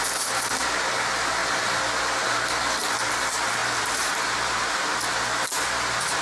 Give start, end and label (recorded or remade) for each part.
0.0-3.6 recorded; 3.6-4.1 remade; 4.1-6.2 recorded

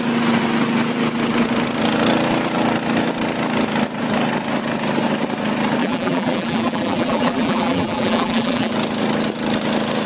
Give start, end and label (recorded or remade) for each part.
0.0-5.8 recorded; 5.8-8.7 remade; 8.7-10.1 recorded

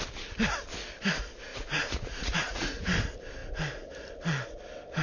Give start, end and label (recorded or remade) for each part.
0.0-1.5 recorded; 1.5-2.8 remade; 2.8-5.0 recorded